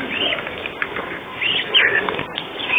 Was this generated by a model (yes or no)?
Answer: no